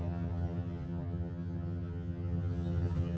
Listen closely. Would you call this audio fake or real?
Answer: fake